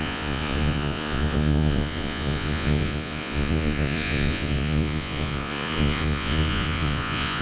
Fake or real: fake